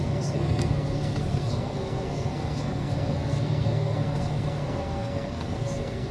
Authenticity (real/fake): fake